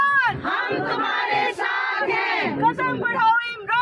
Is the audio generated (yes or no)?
no